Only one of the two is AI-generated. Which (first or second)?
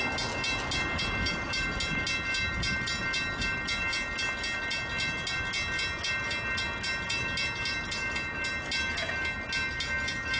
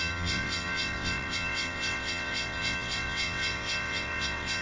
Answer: second